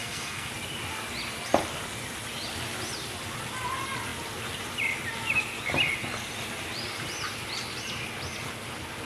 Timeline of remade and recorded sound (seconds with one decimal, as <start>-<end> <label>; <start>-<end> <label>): 0.0-0.5 remade; 0.5-9.1 recorded